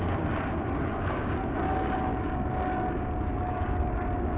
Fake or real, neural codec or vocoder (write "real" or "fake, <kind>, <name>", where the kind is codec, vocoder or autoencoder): fake, codec, DAC